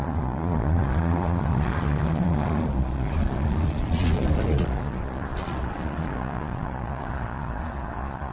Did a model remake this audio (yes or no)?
yes